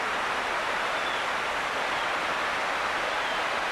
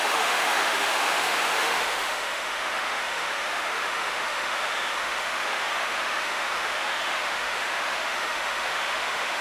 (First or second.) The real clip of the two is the first